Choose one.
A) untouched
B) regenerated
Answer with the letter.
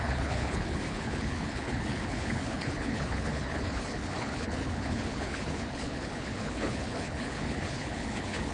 B